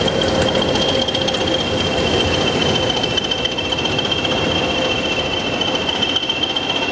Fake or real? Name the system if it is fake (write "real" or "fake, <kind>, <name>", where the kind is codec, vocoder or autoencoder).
real